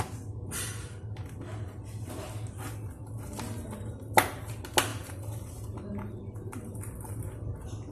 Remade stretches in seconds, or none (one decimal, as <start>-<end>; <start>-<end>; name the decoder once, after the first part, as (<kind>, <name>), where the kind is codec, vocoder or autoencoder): none